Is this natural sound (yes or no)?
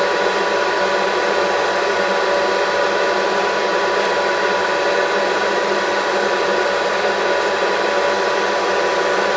no